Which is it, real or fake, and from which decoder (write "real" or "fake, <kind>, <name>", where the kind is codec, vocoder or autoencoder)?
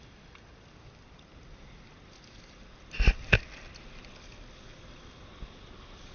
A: real